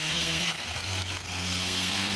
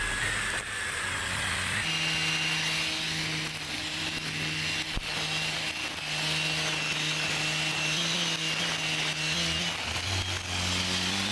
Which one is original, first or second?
second